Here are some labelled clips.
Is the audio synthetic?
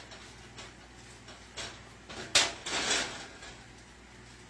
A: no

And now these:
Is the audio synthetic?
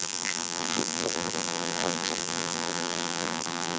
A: yes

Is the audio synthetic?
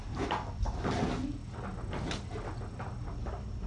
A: no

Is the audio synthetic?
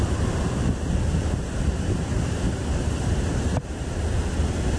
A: no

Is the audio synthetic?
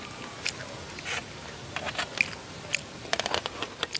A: no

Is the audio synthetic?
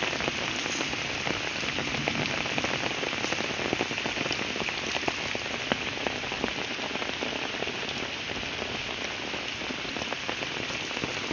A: no